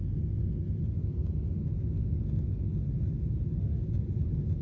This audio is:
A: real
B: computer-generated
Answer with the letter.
A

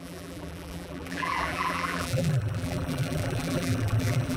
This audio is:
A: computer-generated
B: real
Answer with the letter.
A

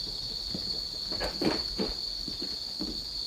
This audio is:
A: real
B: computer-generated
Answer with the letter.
B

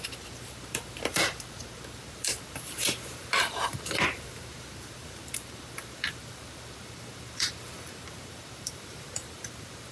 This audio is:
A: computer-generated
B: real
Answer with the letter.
A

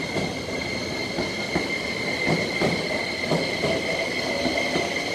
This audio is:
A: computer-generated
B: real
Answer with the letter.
B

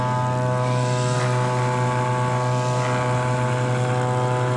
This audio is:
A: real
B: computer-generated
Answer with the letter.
A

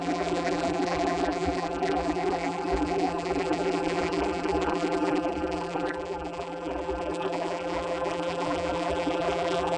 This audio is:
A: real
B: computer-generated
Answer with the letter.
B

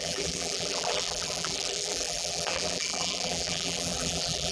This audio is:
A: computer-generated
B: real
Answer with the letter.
A